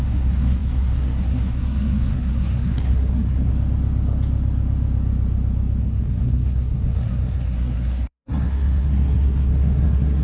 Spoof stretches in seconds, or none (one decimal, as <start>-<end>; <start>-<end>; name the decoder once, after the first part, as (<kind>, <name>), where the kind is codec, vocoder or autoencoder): 0.0-3.5 (codec, SNAC); 5.8-10.2